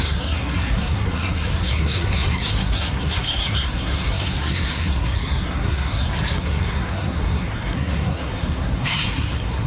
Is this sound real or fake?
fake